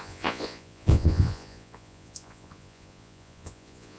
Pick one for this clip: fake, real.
fake